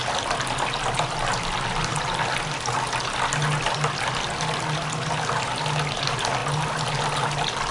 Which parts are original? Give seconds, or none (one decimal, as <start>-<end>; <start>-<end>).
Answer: 0.0-7.7